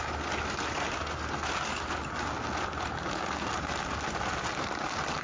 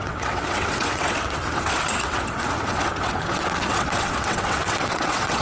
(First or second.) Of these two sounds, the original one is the first